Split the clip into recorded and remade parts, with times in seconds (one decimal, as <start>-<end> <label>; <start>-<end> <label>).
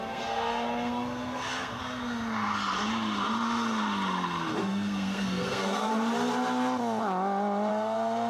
0.0-1.8 remade; 1.8-4.6 recorded; 4.6-5.9 remade; 5.9-7.7 recorded; 7.7-8.3 remade